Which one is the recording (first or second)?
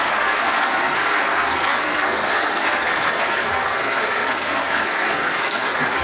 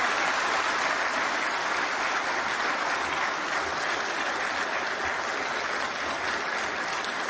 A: second